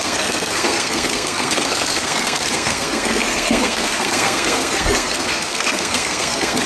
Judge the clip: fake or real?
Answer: fake